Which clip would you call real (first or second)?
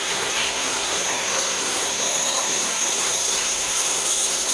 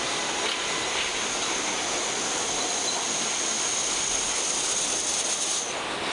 second